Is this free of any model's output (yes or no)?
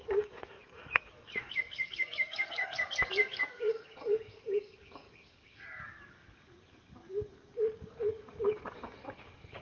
no